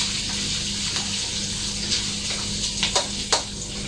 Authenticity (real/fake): real